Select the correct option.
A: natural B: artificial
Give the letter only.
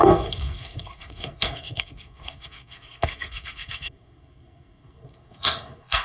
B